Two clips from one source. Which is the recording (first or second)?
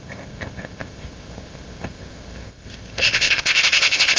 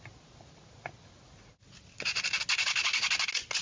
second